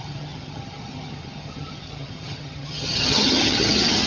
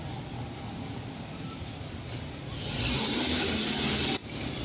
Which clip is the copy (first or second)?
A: first